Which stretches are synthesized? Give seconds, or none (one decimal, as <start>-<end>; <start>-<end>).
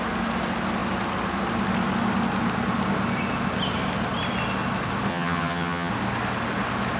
5.1-5.9